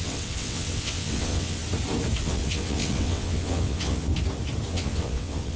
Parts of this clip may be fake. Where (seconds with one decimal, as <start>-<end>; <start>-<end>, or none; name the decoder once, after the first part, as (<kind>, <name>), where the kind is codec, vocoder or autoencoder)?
0.0-1.6 (vocoder, WaveNeXt); 2.2-4.1; 4.7-5.6